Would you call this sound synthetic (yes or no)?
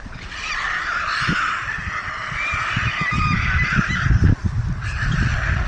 no